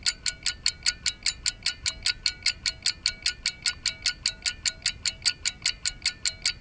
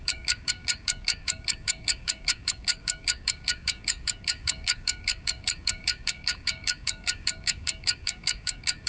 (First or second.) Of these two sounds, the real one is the first